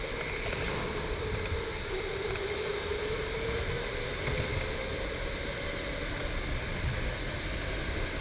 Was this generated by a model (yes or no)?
no